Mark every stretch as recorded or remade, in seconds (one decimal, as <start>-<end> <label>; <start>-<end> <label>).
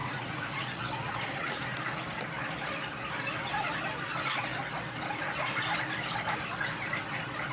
0.0-1.5 remade; 1.5-7.5 recorded